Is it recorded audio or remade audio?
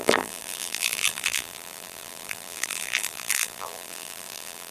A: remade